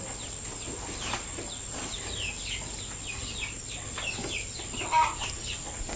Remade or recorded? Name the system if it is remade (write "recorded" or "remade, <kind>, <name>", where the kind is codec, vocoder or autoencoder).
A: recorded